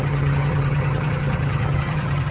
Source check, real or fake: fake